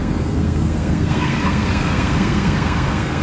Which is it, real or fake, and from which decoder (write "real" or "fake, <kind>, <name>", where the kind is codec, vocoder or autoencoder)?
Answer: fake, codec, SNAC